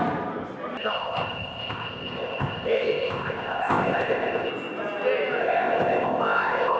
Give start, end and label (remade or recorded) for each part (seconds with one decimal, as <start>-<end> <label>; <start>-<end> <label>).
0.0-0.8 recorded; 0.8-4.5 remade; 4.5-5.4 recorded; 5.4-6.8 remade